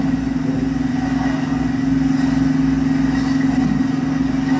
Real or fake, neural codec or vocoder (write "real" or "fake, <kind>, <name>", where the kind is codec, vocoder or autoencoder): real